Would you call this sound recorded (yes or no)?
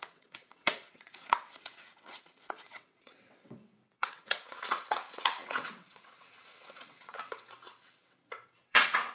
no